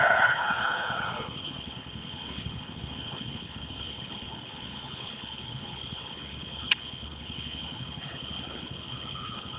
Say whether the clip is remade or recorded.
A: remade